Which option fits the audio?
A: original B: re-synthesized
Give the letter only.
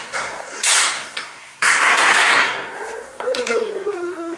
B